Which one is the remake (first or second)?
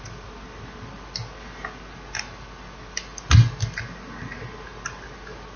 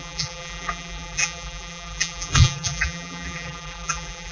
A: second